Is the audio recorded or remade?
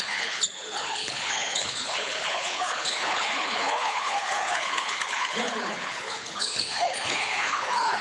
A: remade